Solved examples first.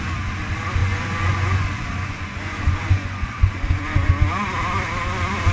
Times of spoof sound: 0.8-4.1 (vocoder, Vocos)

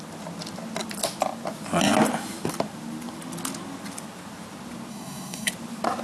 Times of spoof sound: 4.9-5.5 (codec, SNAC)

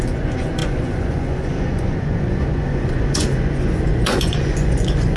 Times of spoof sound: 0.0-5.2 (vocoder, Vocos)

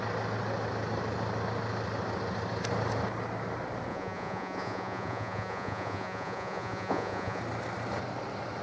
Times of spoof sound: 3.9-7.4 (vocoder, Vocos)

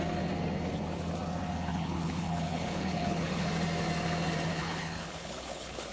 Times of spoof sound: 1.7-3.5 (codec, HILCodec); 4.5-5.9

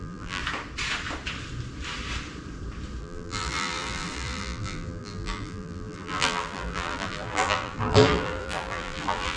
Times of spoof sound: 0.0-0.4 (vocoder, BigVGAN v2); 3.0-9.4

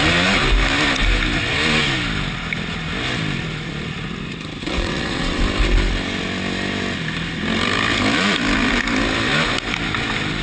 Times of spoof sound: 4.6-5.4 (vocoder, WaveNeXt)